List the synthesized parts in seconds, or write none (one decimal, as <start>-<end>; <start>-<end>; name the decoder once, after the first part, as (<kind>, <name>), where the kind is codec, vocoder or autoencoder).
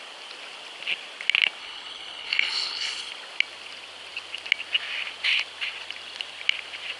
1.6-3.1 (codec, HILCodec)